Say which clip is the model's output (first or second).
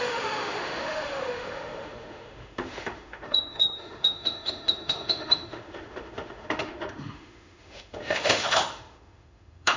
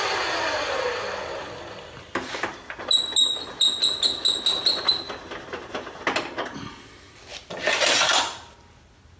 first